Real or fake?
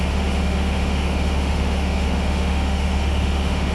fake